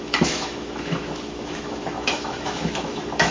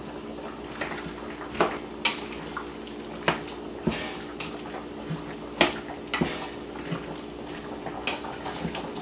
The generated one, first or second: first